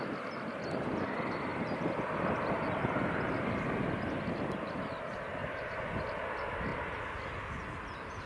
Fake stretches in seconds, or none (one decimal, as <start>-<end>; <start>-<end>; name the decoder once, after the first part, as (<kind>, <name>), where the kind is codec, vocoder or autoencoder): 5.4-6.0 (vocoder, Vocos)

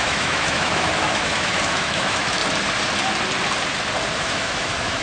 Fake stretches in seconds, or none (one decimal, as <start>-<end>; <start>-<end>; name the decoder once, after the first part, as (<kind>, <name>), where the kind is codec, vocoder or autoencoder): 0.0-2.4 (autoencoder, DAC-VAE); 4.2-5.0

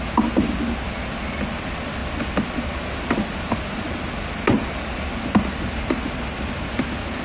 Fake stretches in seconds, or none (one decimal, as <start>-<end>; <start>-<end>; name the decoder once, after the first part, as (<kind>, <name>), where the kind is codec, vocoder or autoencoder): none

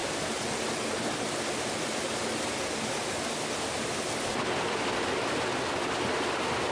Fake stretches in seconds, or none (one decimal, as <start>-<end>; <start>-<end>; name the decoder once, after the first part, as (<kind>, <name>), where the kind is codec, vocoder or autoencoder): none

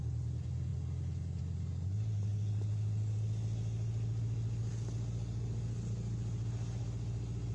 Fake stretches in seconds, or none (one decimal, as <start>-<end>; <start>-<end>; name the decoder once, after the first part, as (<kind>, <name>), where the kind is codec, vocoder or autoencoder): none

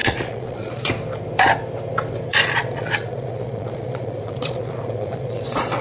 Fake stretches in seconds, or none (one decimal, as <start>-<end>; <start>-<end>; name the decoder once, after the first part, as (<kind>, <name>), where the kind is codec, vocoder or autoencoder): 0.0-0.9 (vocoder, Vocos); 2.3-5.8

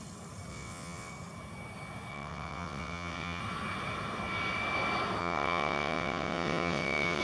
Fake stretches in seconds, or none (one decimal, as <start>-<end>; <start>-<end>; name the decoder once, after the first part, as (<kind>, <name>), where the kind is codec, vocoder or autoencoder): 0.5-1.1 (vocoder, WaveNeXt); 2.1-3.4; 5.2-7.2